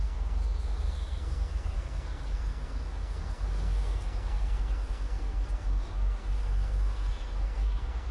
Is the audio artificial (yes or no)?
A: yes